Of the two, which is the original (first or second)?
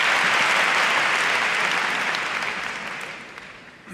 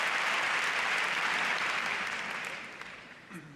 first